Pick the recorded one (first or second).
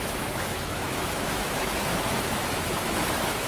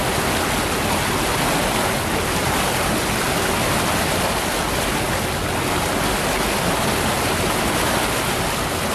second